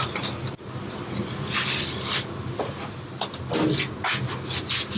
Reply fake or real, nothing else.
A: real